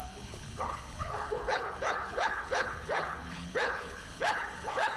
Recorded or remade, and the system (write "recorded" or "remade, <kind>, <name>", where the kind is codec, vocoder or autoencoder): remade, codec, HILCodec